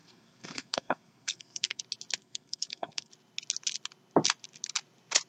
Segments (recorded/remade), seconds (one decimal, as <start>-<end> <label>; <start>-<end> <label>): 0.0-1.8 remade; 1.8-2.2 recorded; 2.2-3.1 remade; 3.1-5.3 recorded